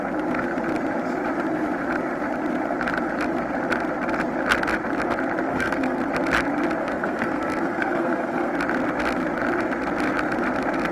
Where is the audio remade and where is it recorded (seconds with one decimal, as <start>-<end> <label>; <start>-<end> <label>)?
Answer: 0.0-5.5 recorded; 5.5-6.0 remade; 6.0-6.8 recorded; 6.8-8.5 remade; 8.5-10.9 recorded